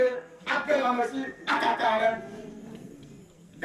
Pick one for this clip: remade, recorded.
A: remade